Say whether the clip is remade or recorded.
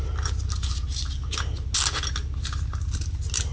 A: recorded